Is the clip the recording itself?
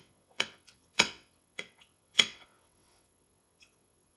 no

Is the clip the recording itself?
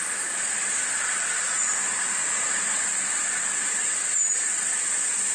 yes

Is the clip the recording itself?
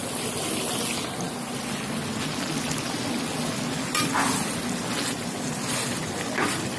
yes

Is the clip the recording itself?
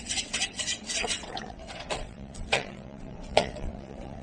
no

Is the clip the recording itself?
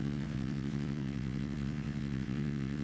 no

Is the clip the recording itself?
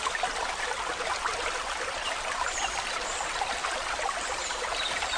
yes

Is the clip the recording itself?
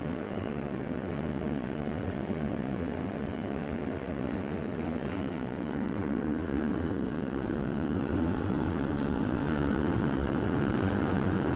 no